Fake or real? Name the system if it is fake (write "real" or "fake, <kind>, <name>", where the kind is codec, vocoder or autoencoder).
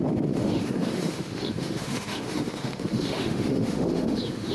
fake, autoencoder, DAC-VAE